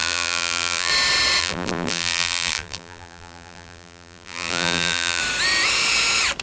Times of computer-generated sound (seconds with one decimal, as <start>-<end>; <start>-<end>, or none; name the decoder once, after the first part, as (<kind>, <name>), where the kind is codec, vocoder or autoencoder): 0.0-0.9 (vocoder, BigVGAN v2); 1.4-5.2